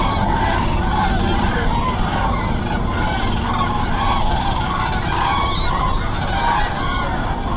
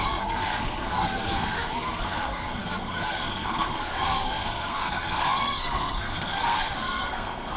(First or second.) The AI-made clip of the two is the second